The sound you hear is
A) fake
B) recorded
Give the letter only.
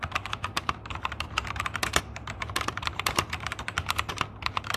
A